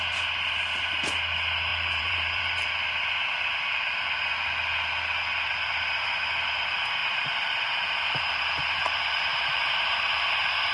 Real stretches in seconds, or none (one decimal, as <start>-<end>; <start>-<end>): 0.0-1.7; 2.7-7.0